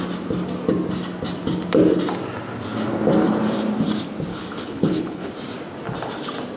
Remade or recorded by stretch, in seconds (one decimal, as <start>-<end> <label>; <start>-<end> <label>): 0.0-4.3 recorded; 4.3-5.3 remade; 5.3-6.6 recorded